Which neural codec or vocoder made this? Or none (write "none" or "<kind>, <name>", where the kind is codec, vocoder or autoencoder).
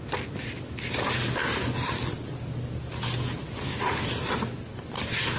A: none